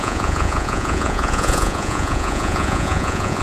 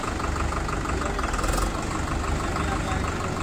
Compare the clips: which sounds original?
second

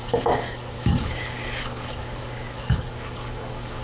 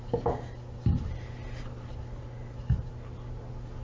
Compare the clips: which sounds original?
second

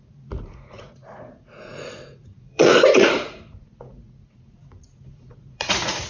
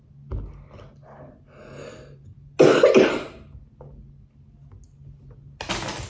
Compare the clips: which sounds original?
second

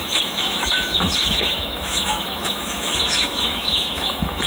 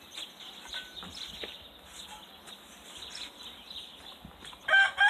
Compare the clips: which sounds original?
second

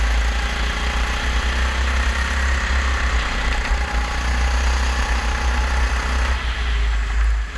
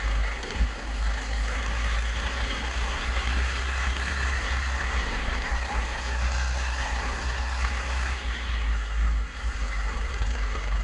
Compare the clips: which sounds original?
first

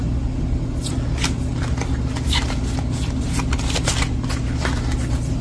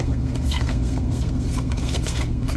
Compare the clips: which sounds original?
first